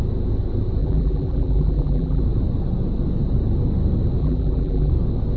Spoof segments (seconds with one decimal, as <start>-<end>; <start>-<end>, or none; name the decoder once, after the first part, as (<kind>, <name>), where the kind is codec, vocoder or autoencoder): 0.8-2.2 (vocoder, BigVGAN v2); 4.2-4.9